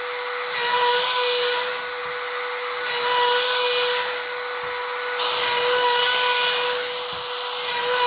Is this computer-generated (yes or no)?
no